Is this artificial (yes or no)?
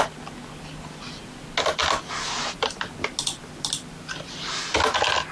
no